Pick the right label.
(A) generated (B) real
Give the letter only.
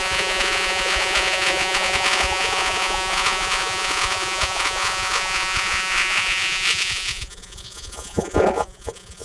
A